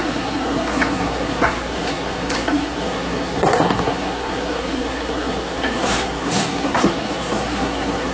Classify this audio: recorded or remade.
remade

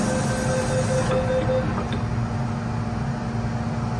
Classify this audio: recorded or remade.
recorded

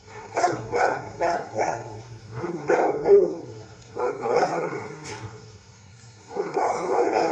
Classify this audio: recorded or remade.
remade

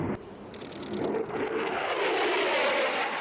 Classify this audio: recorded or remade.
recorded